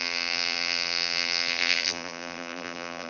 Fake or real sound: fake